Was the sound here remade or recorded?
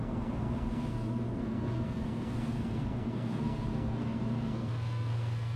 remade